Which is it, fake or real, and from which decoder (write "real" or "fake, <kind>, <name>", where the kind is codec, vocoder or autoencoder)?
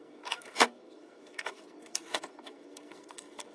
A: fake, codec, SNAC